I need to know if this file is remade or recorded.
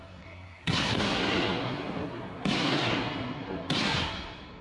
remade